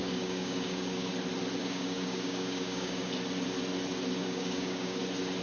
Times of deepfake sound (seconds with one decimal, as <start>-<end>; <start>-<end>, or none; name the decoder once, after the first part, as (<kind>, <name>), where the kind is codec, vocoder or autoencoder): 0.0-1.1 (codec, DAC); 1.6-3.1; 4.2-5.0